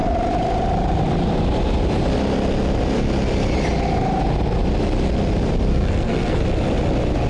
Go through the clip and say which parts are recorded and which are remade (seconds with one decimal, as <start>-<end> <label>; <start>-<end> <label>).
0.0-5.7 recorded; 5.7-6.4 remade; 6.4-7.3 recorded